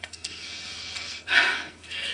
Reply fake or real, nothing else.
fake